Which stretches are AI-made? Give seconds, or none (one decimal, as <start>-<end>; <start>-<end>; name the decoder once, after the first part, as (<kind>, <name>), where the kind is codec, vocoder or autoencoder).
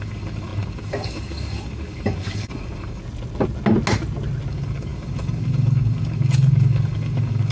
0.0-3.0 (codec, DAC); 4.5-7.5